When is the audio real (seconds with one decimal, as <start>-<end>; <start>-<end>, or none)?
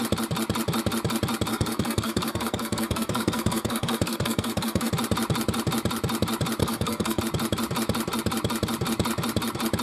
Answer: 0.0-1.5; 4.9-6.6; 7.2-9.8